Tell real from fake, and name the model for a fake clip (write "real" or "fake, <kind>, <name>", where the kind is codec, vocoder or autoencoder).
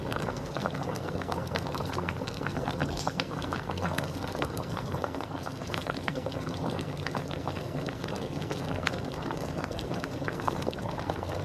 fake, codec, SNAC